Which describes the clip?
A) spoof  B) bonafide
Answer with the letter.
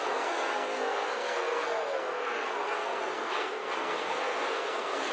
A